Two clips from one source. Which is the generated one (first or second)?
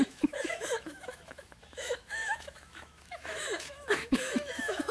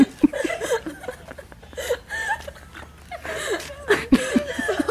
first